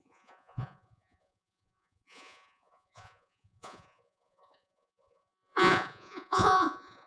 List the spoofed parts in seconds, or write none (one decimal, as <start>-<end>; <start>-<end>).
0.0-7.1